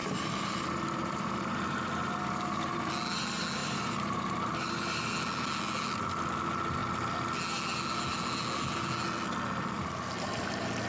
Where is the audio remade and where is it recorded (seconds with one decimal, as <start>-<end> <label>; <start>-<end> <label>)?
0.0-2.9 remade; 2.9-3.6 recorded; 3.6-5.1 remade; 5.1-10.9 recorded